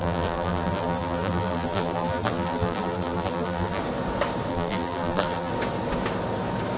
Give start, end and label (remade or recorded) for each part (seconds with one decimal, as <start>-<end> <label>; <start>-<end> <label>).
0.0-3.8 remade; 3.8-4.5 recorded; 4.5-5.5 remade; 5.5-6.8 recorded